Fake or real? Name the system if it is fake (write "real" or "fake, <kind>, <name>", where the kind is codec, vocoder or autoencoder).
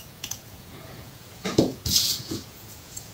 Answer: fake, vocoder, Vocos